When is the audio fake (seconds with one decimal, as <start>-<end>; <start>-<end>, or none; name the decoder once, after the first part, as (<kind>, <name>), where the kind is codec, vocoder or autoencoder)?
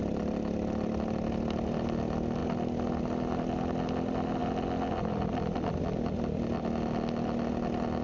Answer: none